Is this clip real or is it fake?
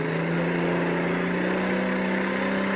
real